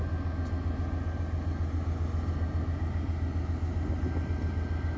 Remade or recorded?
recorded